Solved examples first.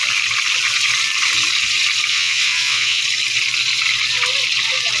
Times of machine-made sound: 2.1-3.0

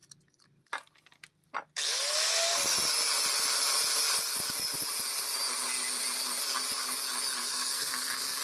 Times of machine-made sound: 7.4-8.4

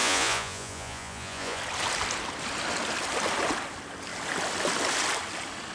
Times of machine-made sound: 0.0-1.6

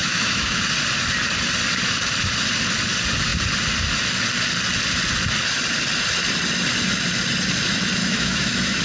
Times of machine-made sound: 0.0-0.6; 8.0-8.8

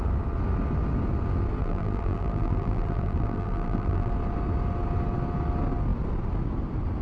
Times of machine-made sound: 1.6-4.1

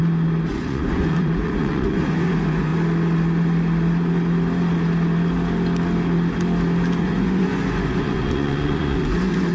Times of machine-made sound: 0.5-2.7; 7.0-9.5

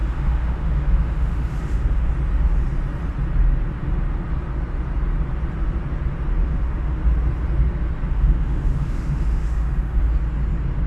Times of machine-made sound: 0.0-2.1; 6.4-7.0; 8.1-10.0

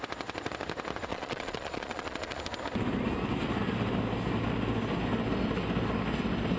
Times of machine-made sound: 1.1-2.4